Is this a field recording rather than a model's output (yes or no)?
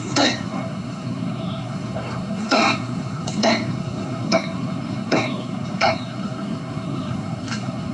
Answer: no